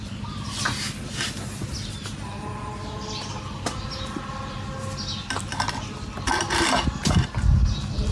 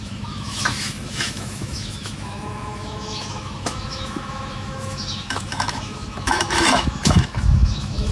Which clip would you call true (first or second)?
first